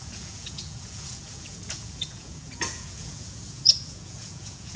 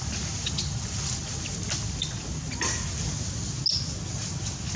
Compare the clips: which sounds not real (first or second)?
first